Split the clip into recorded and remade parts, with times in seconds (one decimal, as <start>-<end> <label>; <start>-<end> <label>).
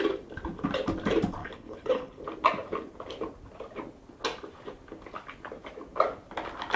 0.0-1.4 recorded; 1.4-2.2 remade; 2.2-6.8 recorded